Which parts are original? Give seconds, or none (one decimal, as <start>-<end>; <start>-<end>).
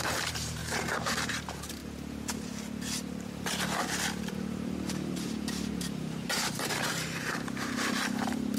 1.8-4.3